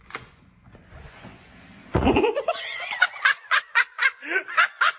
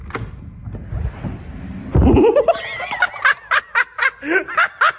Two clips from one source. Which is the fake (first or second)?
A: first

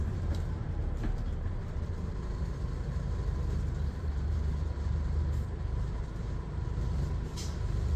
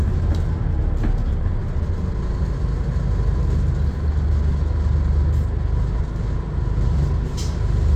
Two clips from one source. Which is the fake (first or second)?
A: first